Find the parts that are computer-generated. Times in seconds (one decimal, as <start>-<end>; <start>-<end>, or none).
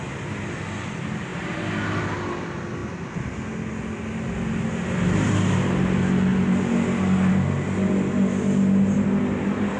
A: none